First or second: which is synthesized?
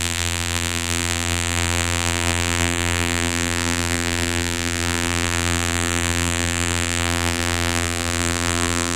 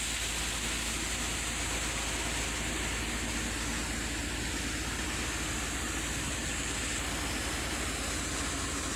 first